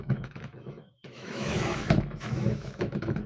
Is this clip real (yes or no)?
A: no